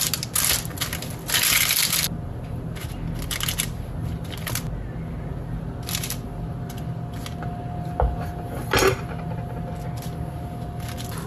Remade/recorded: recorded